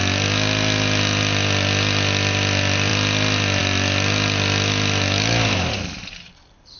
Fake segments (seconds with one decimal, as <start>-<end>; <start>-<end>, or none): none